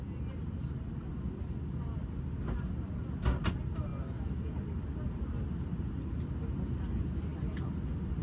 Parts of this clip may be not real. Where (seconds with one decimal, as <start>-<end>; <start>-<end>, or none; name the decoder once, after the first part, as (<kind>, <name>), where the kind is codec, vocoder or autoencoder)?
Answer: none